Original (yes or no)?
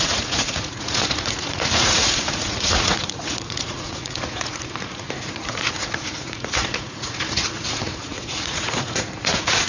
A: no